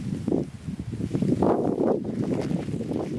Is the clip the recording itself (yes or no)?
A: yes